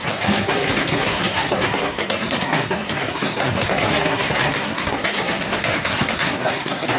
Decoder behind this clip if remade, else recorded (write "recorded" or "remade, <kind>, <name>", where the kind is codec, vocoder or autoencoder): remade, codec, SNAC